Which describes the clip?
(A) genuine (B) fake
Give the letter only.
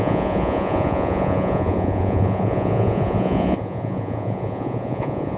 B